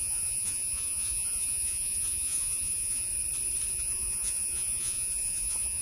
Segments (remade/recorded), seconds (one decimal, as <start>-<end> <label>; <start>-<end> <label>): 0.0-3.1 remade; 3.1-3.7 recorded; 3.7-5.8 remade